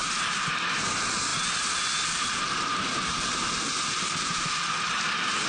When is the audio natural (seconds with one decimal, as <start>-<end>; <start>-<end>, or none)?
0.0-5.5